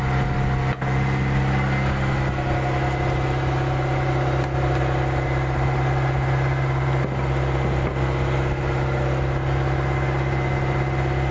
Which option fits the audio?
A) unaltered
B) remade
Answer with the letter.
A